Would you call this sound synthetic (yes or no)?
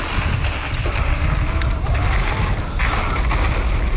no